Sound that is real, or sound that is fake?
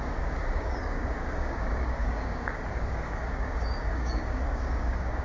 fake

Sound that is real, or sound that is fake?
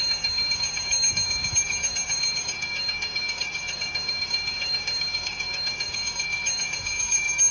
fake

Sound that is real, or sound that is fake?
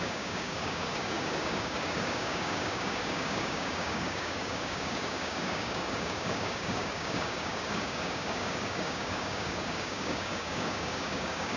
fake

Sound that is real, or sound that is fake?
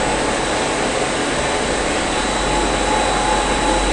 real